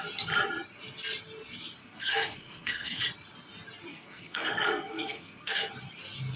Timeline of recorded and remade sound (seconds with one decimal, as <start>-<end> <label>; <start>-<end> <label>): 0.0-1.8 recorded; 1.8-3.0 remade; 3.0-3.9 recorded; 3.9-5.7 remade; 5.7-6.4 recorded